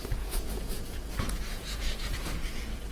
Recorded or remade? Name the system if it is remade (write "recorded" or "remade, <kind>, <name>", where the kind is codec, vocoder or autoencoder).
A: remade, vocoder, Vocos